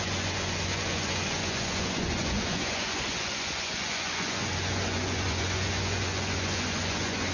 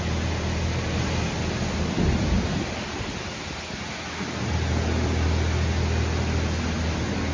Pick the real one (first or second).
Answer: second